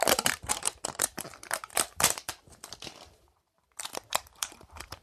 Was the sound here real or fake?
fake